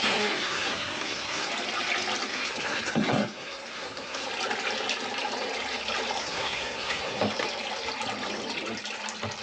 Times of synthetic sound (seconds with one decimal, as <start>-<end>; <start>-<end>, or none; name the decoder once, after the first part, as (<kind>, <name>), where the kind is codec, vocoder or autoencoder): 0.0-1.5 (codec, SNAC); 2.3-4.3; 6.2-7.2